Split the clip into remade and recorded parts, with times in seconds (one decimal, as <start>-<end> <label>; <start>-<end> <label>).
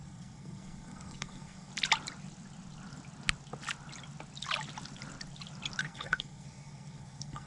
0.0-1.7 remade; 1.7-5.8 recorded; 5.8-7.5 remade